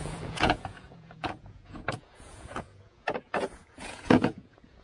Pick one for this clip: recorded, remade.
remade